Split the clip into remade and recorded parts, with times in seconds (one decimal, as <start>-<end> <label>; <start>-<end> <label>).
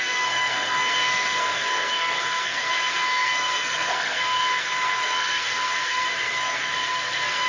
0.0-7.5 remade